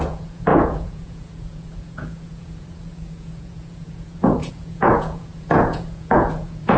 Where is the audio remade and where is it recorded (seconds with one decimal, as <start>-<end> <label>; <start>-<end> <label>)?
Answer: 0.0-6.8 remade